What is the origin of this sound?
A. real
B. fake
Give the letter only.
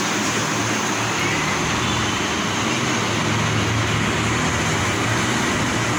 A